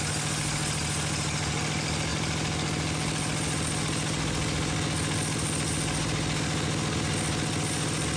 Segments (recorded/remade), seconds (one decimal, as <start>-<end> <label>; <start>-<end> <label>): 0.0-8.2 recorded